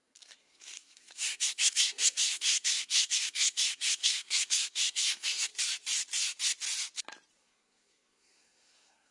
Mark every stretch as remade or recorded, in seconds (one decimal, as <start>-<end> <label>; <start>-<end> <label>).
0.0-5.5 remade; 5.5-7.4 recorded; 7.4-9.1 remade